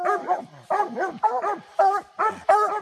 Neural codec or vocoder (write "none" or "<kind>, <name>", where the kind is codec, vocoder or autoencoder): none